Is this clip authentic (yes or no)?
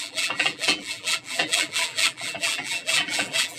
no